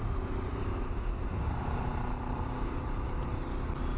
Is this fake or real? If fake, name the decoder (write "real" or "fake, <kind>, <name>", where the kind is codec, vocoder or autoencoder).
fake, vocoder, BigVGAN v2